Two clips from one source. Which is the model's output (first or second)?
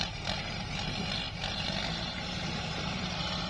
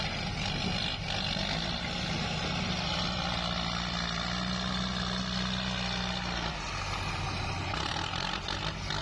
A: first